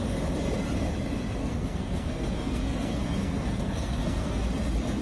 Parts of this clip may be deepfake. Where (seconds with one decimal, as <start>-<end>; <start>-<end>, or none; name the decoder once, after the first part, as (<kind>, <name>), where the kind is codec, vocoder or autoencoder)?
1.4-4.4 (codec, SNAC)